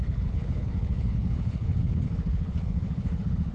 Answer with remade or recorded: remade